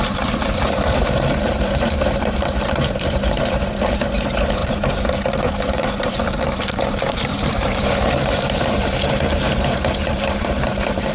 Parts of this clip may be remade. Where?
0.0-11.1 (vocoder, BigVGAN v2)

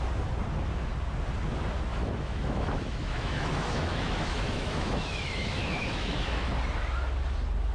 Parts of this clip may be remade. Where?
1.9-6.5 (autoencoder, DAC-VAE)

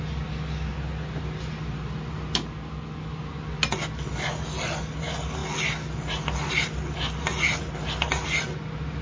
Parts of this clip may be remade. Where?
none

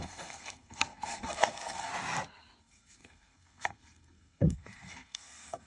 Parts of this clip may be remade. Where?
0.0-1.9 (codec, SNAC); 2.6-5.7

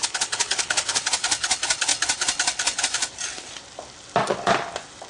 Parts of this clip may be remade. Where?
0.0-1.0 (codec, HILCodec)

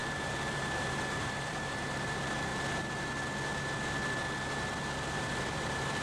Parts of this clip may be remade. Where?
0.0-2.5 (vocoder, BigVGAN v2); 5.2-6.0